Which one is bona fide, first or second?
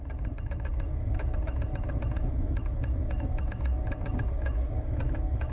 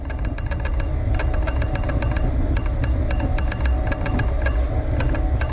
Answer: second